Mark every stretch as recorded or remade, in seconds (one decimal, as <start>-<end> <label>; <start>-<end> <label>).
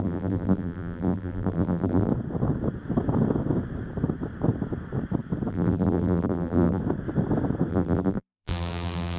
0.0-2.1 remade; 2.1-5.5 recorded; 5.5-6.8 remade; 6.8-7.7 recorded; 7.7-9.2 remade